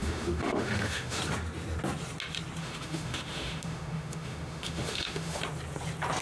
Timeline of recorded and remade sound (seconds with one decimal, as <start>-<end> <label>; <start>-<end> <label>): 0.0-1.2 remade; 1.2-2.6 recorded; 2.6-5.4 remade; 5.4-6.2 recorded